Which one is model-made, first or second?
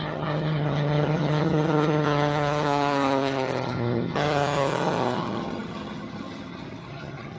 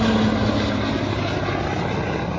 first